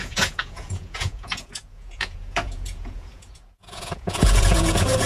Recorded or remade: remade